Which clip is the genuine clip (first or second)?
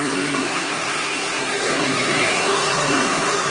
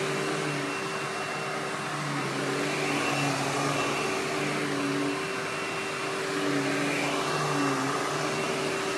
second